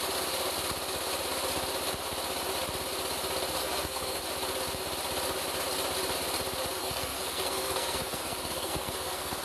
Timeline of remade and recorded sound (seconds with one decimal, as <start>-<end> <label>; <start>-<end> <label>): 0.0-3.6 recorded; 3.6-4.2 remade; 4.2-6.8 recorded; 6.8-9.4 remade